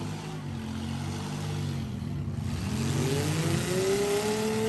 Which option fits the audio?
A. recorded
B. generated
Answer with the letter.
A